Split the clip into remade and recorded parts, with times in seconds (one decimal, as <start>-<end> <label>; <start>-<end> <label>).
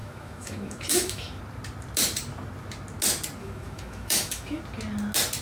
0.0-1.4 remade; 1.4-3.4 recorded; 3.4-4.6 remade; 4.6-5.4 recorded